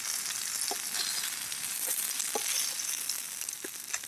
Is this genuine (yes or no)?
yes